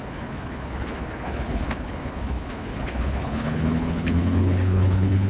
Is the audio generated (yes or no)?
yes